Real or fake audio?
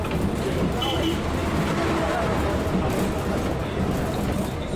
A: real